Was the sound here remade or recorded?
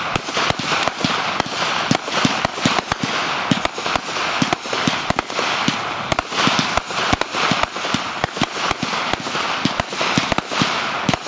recorded